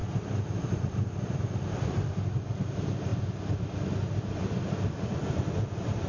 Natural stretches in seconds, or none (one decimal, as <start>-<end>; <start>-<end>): 1.4-6.1